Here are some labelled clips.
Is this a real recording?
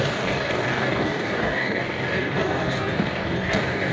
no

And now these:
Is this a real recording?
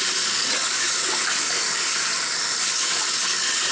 no